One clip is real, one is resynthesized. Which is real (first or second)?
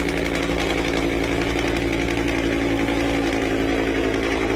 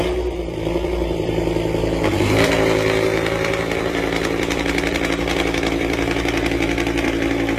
first